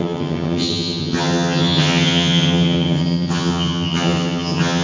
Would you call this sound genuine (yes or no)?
no